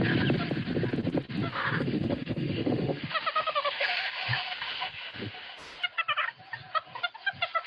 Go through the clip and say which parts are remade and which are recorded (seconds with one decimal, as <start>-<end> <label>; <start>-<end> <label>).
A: 0.0-1.5 recorded; 1.5-5.8 remade; 5.8-7.7 recorded